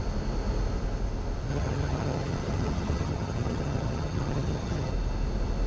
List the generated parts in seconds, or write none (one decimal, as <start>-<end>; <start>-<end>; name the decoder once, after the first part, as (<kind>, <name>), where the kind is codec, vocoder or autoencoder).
1.5-4.9 (vocoder, HiFi-GAN)